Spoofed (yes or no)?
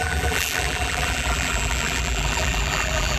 yes